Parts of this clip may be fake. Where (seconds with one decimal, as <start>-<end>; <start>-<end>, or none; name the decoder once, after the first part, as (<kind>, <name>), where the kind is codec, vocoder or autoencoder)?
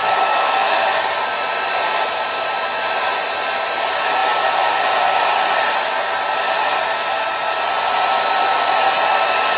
0.0-0.8 (autoencoder, DAC-VAE)